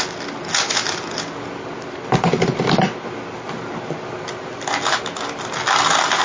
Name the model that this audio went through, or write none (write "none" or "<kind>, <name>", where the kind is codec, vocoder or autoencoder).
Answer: none